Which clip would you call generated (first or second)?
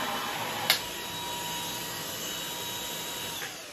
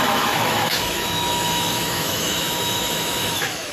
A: second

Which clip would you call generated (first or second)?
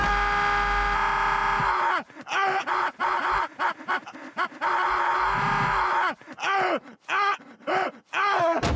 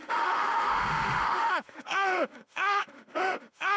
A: second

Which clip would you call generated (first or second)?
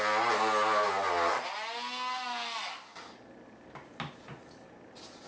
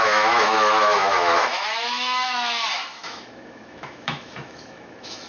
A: second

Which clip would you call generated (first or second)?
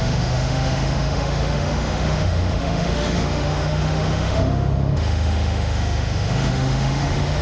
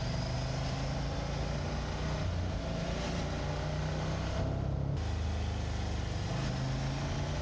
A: first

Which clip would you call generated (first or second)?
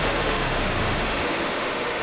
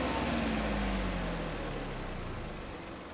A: first